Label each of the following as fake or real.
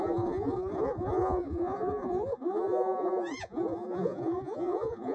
fake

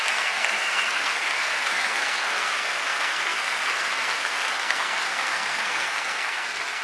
fake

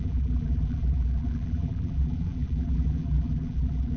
fake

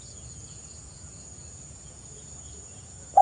fake